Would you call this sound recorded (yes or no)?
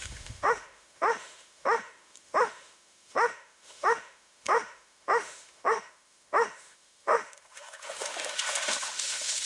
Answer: no